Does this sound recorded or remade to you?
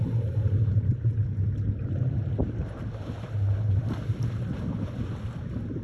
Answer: recorded